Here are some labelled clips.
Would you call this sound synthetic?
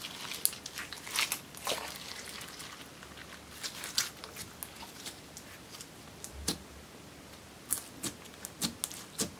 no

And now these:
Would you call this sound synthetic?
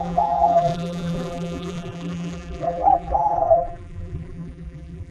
yes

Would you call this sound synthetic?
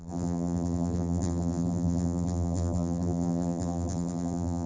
yes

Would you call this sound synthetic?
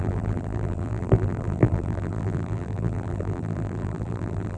yes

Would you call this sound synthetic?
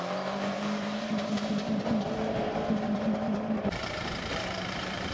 yes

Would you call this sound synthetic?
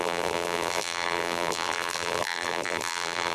yes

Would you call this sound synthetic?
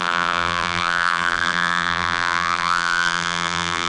yes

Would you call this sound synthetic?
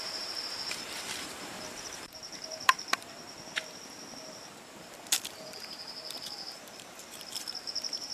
yes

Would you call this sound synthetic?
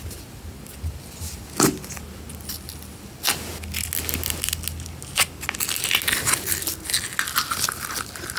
no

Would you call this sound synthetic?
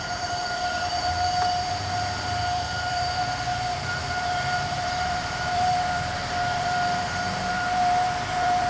yes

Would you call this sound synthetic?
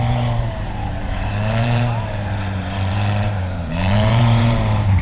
yes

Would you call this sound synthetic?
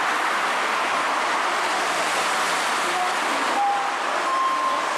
yes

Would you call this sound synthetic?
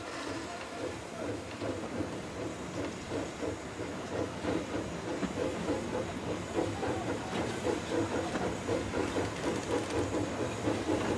yes